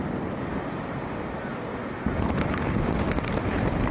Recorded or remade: remade